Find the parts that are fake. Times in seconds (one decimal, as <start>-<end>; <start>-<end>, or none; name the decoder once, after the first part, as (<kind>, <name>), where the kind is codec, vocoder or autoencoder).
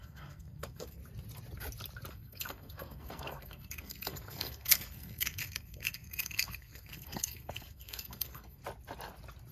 0.0-1.0 (codec, SNAC); 2.1-8.6